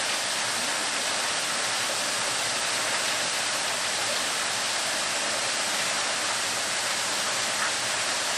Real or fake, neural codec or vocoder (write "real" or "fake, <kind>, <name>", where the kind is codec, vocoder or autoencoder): real